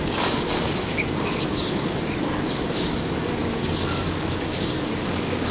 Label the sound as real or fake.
fake